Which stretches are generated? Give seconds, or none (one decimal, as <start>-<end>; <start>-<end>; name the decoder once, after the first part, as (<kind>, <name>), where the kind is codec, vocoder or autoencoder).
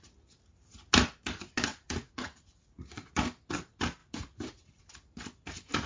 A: 1.7-3.1 (vocoder, Vocos); 4.0-4.8